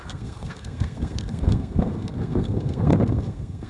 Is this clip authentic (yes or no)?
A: no